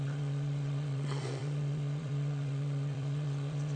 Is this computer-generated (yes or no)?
yes